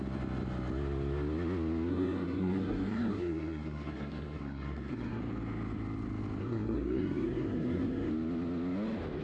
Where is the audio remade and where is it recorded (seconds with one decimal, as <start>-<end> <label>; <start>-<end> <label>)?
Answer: 0.0-1.9 recorded; 1.9-5.2 remade; 5.2-6.4 recorded; 6.4-8.1 remade; 8.1-9.2 recorded